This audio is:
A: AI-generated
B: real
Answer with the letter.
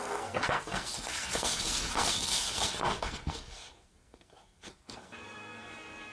A